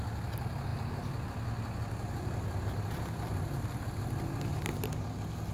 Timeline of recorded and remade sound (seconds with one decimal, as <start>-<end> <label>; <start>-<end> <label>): 0.0-5.5 recorded